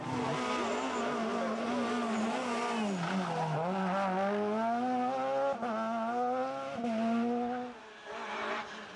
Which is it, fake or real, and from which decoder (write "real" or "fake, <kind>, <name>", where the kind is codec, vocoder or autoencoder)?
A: real